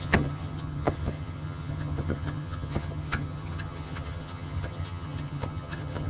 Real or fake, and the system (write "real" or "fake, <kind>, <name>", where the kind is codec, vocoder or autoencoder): fake, vocoder, HiFi-GAN